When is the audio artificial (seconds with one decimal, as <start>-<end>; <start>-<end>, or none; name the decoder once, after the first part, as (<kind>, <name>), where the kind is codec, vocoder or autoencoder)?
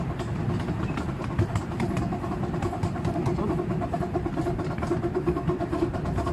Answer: none